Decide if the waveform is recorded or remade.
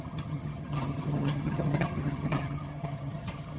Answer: remade